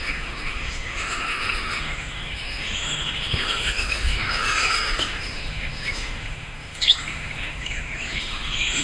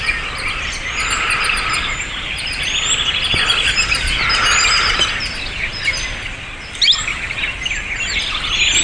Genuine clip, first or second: second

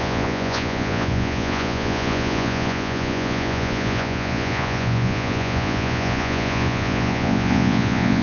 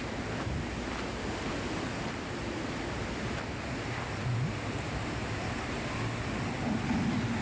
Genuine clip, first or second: second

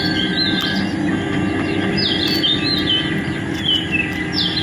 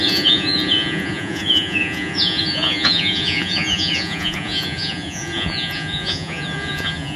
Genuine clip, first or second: first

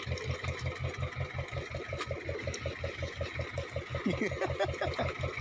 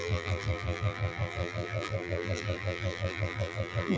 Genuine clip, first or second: first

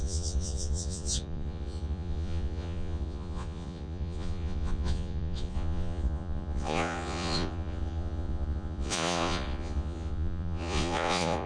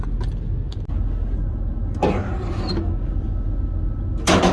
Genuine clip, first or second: second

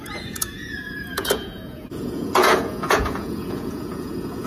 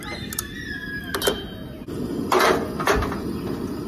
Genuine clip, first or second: second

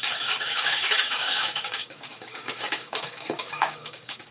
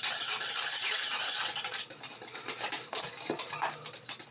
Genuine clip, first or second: second